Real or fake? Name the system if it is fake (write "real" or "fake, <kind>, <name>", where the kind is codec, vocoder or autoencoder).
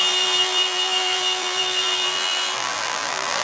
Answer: fake, vocoder, BigVGAN v2